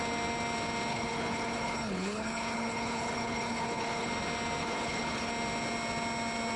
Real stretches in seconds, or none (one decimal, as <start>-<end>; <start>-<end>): 0.0-0.9; 4.1-4.6; 5.3-6.6